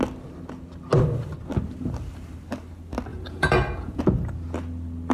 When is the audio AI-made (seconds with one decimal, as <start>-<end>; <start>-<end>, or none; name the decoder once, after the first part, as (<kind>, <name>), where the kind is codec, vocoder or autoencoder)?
3.1-4.0 (vocoder, Vocos)